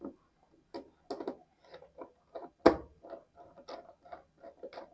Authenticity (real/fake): real